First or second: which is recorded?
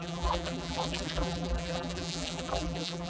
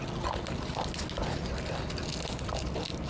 second